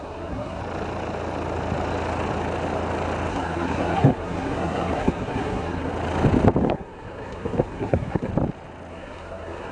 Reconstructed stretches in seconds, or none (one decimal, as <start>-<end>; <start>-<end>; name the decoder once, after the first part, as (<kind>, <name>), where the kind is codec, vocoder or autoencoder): 0.0-0.6 (codec, SNAC); 3.3-5.9; 6.6-8.3; 8.9-9.7